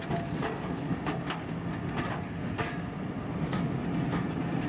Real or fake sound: real